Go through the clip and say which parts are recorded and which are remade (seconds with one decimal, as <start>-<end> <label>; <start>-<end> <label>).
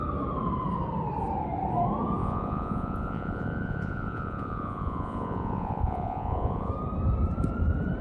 0.0-2.2 recorded; 2.2-6.7 remade; 6.7-8.0 recorded